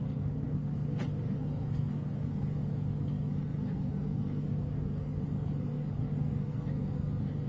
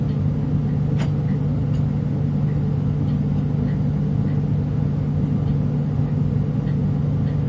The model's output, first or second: first